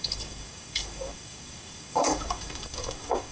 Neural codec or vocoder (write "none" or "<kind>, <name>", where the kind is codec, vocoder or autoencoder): codec, DAC